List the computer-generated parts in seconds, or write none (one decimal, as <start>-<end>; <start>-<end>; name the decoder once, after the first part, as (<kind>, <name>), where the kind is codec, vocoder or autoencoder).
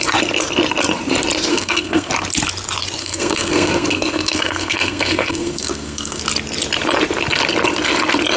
1.5-2.1 (codec, SNAC); 3.0-6.2